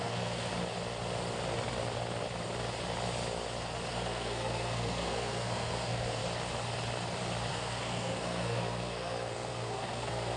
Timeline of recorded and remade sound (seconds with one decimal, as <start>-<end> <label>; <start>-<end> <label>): 0.0-0.5 remade; 0.5-3.9 recorded; 3.9-6.2 remade; 6.2-7.5 recorded; 7.5-10.4 remade